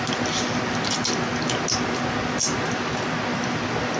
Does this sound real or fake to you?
real